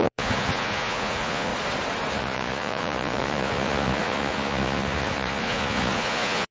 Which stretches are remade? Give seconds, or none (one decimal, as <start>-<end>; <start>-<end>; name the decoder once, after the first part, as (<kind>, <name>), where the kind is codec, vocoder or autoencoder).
0.0-1.5 (vocoder, Vocos); 2.1-6.5